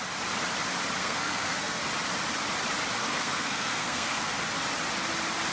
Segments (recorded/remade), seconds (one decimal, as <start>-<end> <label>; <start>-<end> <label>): 0.0-1.0 recorded; 1.0-1.8 remade; 1.8-3.0 recorded; 3.0-4.4 remade; 4.4-5.5 recorded